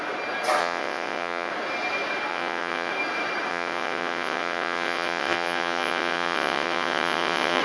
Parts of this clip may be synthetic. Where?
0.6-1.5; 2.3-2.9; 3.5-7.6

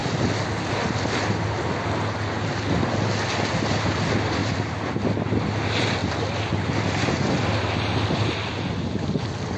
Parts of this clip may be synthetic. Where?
0.0-0.7; 6.0-6.6

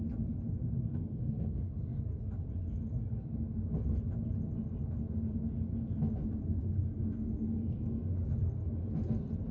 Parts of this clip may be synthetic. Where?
0.9-2.0; 6.5-8.1

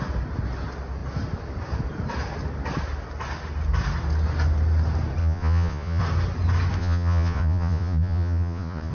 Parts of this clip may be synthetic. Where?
5.2-6.0; 6.8-8.9

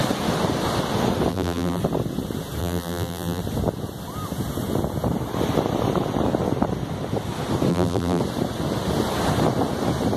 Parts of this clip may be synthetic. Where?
1.3-1.8; 2.6-3.4; 7.7-8.2